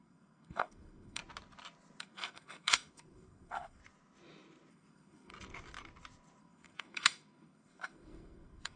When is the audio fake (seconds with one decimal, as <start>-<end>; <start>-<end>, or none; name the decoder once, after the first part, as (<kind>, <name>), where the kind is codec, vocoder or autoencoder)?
0.0-1.2 (codec, SNAC); 2.0-3.8; 4.7-5.3; 6.4-8.8